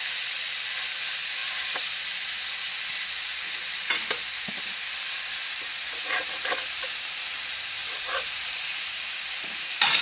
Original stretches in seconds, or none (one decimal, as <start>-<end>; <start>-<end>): 0.0-1.4; 2.3-5.8; 6.5-7.8

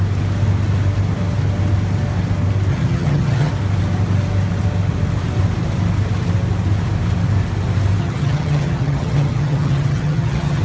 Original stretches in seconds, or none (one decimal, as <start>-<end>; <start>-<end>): 0.0-2.7; 3.5-8.0

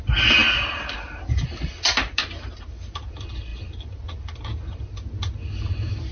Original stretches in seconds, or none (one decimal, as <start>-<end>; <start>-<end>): 0.0-6.1

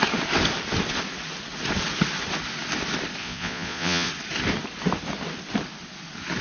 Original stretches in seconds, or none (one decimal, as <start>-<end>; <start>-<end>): 0.0-3.2; 4.1-6.4

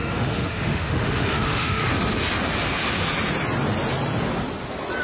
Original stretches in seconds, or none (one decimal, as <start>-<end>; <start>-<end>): 1.8-5.0

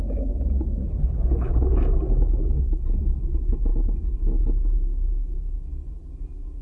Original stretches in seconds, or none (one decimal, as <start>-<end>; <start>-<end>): 0.0-0.8; 1.5-6.6

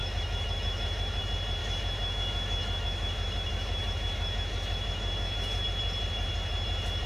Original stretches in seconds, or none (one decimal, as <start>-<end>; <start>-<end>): 1.2-1.6; 5.6-7.1